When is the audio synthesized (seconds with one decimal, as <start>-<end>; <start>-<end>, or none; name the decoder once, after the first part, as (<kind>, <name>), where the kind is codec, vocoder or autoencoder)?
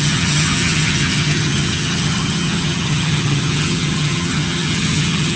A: 0.0-5.4 (vocoder, HiFi-GAN)